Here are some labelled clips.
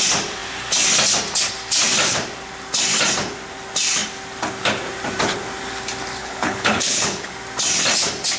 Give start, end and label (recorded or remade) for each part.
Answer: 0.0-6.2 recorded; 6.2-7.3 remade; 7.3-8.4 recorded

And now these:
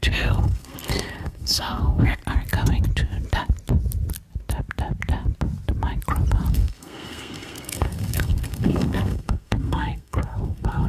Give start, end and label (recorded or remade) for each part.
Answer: 0.0-2.2 remade; 2.2-6.5 recorded; 6.5-10.9 remade

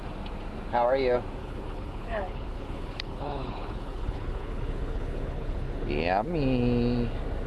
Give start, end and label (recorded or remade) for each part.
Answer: 0.0-1.4 recorded; 1.4-5.9 remade; 5.9-7.5 recorded

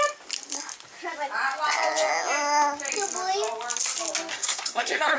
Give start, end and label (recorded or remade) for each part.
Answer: 0.0-4.3 recorded; 4.3-5.2 remade

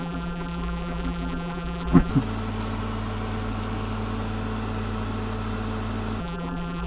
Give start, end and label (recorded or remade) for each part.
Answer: 0.0-2.1 remade; 2.1-6.2 recorded; 6.2-6.9 remade

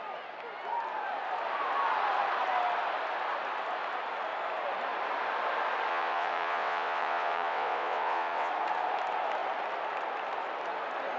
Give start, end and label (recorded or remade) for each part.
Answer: 0.0-5.9 recorded; 5.9-8.5 remade; 8.5-11.2 recorded

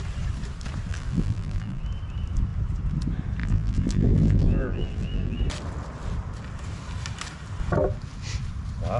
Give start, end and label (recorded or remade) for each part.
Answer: 0.0-0.9 recorded; 0.9-1.8 remade; 1.8-3.4 recorded; 3.4-5.4 remade; 5.4-9.0 recorded